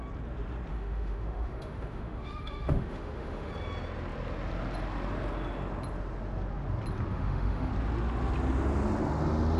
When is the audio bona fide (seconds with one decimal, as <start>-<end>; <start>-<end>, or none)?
0.0-0.7; 3.5-7.1; 7.7-9.6

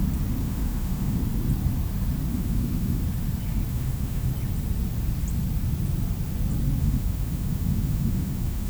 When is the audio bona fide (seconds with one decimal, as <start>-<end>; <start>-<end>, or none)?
0.0-0.4; 1.2-2.3; 3.0-3.7; 4.3-6.8

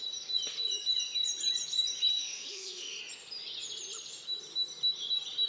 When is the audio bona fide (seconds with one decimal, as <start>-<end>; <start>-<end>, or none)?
0.0-2.1; 3.0-5.5

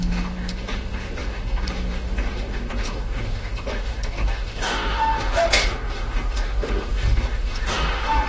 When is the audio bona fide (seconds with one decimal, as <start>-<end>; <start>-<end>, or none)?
none

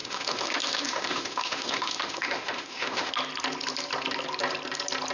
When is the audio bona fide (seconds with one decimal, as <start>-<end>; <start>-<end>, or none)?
3.1-5.1

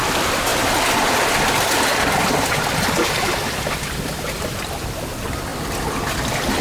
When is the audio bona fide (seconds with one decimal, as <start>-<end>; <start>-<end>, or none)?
0.0-6.6

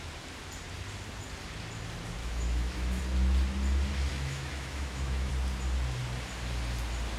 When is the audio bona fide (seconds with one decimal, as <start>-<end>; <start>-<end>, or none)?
0.0-2.2; 3.0-4.1; 5.3-7.2